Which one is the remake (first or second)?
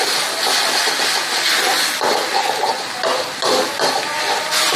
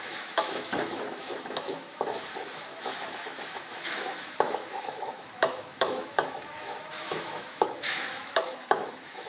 second